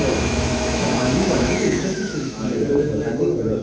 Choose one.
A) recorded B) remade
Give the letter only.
B